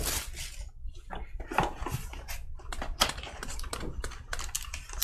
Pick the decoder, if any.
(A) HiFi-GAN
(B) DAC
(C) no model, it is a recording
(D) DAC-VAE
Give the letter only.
C